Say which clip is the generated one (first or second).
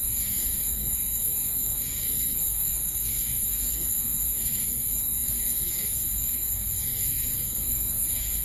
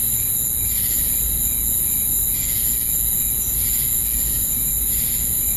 first